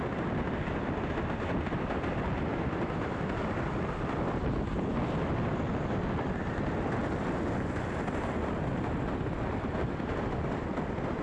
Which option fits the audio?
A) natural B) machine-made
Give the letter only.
A